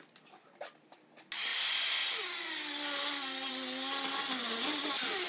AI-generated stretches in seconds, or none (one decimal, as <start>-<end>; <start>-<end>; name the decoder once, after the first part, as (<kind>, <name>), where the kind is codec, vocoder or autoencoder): none